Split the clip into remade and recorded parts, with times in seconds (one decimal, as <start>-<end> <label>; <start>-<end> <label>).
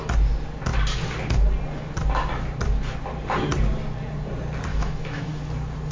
0.0-4.7 recorded; 4.7-5.3 remade; 5.3-5.9 recorded